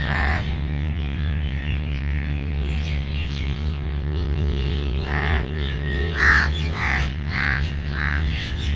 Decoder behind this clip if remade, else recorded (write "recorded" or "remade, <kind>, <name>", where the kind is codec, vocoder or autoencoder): remade, vocoder, WaveNeXt